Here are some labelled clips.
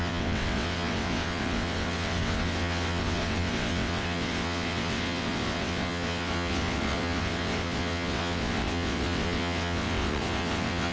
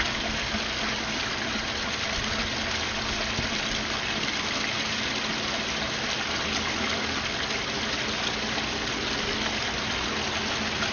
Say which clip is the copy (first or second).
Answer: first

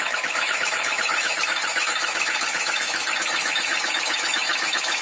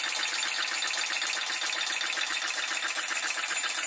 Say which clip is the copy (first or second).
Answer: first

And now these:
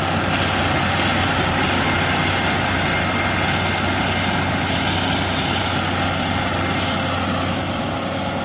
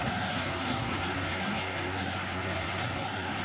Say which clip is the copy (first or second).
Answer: second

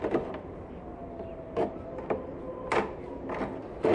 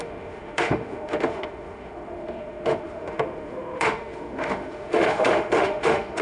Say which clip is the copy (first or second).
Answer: second